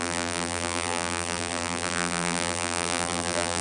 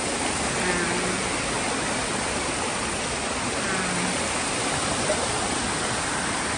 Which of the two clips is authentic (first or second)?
second